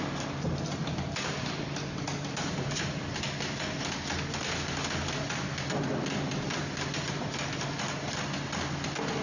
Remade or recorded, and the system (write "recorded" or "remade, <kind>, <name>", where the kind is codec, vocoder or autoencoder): recorded